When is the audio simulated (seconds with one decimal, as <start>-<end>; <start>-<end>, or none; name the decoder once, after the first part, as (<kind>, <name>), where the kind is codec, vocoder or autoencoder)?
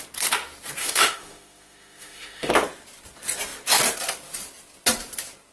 0.8-2.5 (autoencoder, DAC-VAE)